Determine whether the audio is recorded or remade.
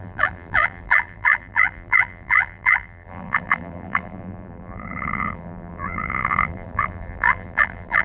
remade